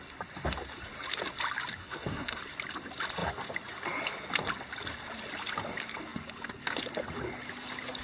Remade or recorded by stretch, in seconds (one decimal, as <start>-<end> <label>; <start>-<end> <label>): 0.0-1.8 recorded; 1.8-2.4 remade; 2.4-8.0 recorded